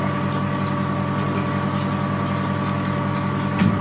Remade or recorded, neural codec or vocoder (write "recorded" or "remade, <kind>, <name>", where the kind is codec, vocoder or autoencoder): recorded